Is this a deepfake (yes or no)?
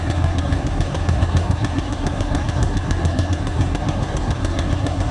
yes